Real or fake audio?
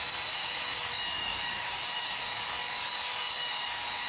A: fake